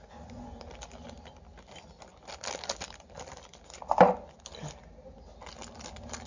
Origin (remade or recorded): recorded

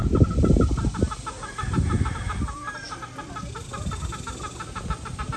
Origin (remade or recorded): recorded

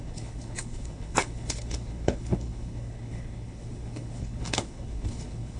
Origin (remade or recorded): remade